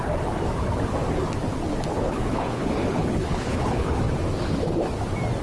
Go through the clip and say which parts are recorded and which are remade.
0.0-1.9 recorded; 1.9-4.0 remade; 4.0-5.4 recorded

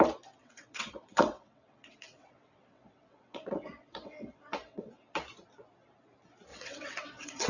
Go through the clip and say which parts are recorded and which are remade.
0.0-0.4 recorded; 0.4-4.9 remade; 4.9-6.5 recorded; 6.5-7.5 remade

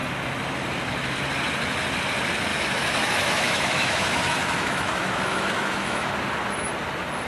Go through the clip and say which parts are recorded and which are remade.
0.0-2.5 recorded; 2.5-6.1 remade; 6.1-7.3 recorded

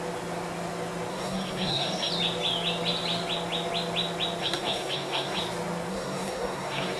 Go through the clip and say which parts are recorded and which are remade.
0.0-1.1 recorded; 1.1-2.1 remade; 2.1-4.4 recorded; 4.4-5.4 remade; 5.4-5.9 recorded; 5.9-7.0 remade

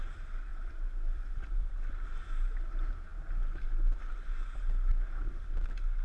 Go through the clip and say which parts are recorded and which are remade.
0.0-0.5 recorded; 0.5-1.7 remade; 1.7-6.0 recorded

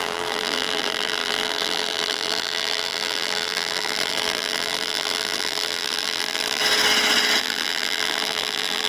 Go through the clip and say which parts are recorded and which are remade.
0.0-6.6 remade; 6.6-7.4 recorded; 7.4-8.9 remade